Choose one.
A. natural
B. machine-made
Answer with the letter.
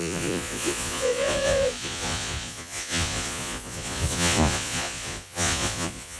B